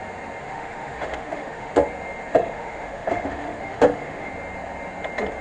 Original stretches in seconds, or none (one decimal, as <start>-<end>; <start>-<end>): 0.0-0.4; 1.7-2.3; 4.3-5.4

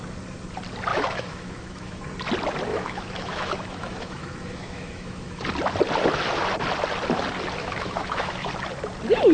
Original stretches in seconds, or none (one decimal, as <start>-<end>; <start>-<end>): 0.0-0.9; 2.0-2.7; 5.4-7.6; 8.5-9.3

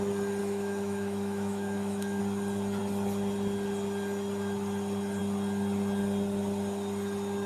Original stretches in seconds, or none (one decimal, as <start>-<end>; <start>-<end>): 0.0-0.4; 2.2-7.5

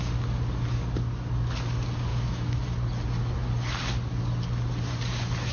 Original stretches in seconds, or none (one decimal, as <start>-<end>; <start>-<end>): 0.0-2.1; 2.6-5.5

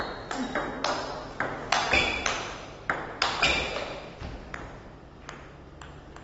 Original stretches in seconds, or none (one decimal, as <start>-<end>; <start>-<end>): 0.0-6.2

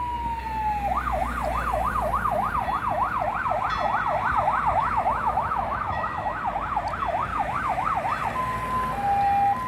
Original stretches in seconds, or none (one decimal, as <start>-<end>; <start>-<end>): 0.0-4.8; 6.4-7.3; 7.9-9.7